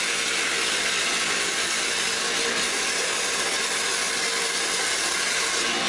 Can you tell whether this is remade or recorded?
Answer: recorded